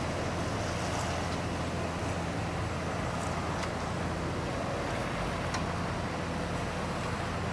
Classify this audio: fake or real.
real